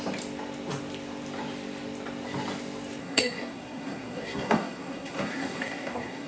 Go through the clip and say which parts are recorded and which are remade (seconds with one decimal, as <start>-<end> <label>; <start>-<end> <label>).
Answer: 0.0-3.0 recorded; 3.0-6.3 remade